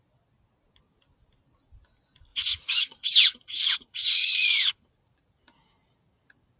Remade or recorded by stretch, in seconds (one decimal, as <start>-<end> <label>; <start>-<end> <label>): 0.0-2.3 recorded; 2.3-5.3 remade; 5.3-6.6 recorded